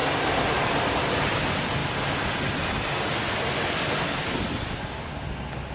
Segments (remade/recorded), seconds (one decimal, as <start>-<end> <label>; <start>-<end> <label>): 0.0-5.7 recorded